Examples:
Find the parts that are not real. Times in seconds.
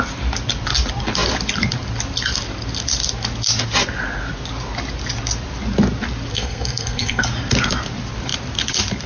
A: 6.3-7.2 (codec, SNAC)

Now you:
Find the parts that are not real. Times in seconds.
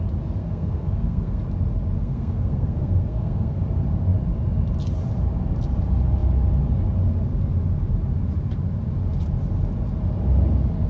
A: 0.4-1.4 (codec, SNAC); 2.0-3.6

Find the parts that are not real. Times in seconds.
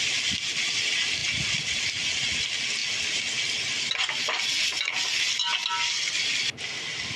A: none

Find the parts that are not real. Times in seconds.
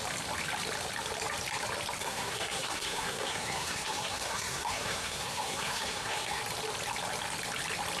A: 2.0-6.4 (codec, SNAC)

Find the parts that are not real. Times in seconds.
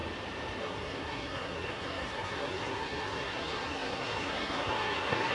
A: 0.6-5.3 (codec, SNAC)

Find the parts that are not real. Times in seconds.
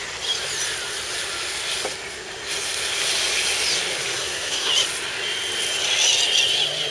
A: 4.0-4.7 (codec, SNAC)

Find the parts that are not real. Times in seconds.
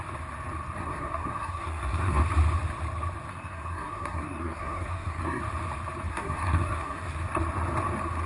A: 0.8-2.2 (codec, SNAC); 3.3-5.4; 6.1-7.0